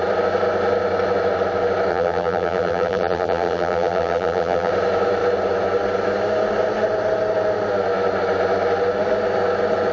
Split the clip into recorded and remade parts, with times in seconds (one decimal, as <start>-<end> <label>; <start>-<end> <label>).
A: 0.0-1.9 recorded; 1.9-4.7 remade; 4.7-9.9 recorded